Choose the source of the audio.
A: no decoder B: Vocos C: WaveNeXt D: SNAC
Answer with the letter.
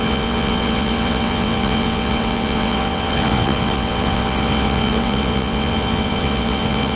C